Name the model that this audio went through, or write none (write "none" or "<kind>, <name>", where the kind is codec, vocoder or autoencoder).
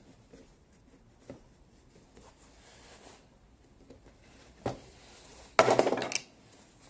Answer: none